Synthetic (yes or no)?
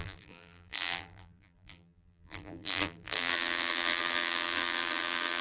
yes